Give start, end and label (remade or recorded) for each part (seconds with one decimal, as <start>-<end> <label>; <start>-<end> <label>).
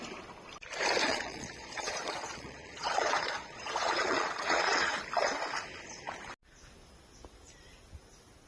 0.0-1.1 recorded; 1.1-5.0 remade; 5.0-8.5 recorded